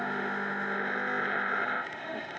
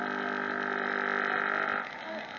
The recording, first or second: second